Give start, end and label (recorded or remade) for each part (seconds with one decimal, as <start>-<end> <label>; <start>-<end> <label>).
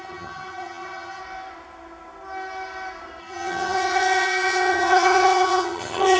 0.0-1.2 remade; 1.2-3.2 recorded; 3.2-6.2 remade